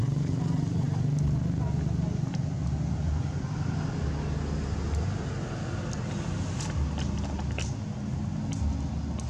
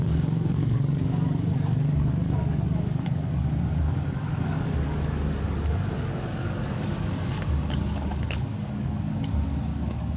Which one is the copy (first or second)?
second